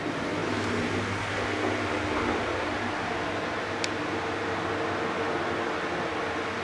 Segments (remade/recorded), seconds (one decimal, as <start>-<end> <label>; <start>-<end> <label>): 0.0-6.6 recorded

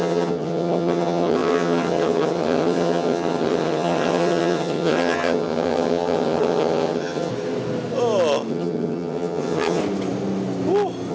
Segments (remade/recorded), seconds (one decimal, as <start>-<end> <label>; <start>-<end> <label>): 0.0-7.3 remade; 7.3-8.5 recorded; 8.5-9.8 remade; 9.8-11.1 recorded

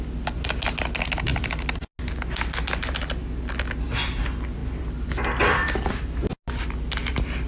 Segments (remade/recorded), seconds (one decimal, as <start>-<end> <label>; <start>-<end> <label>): 0.0-4.6 recorded; 4.6-5.9 remade; 5.9-7.5 recorded

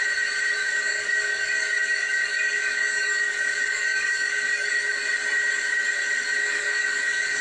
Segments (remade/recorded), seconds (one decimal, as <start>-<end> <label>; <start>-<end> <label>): 0.0-0.6 recorded; 0.6-5.0 remade; 5.0-6.4 recorded; 6.4-7.4 remade